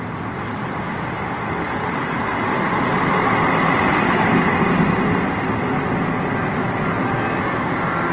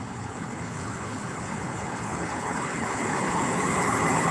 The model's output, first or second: second